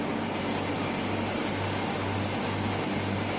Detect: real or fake real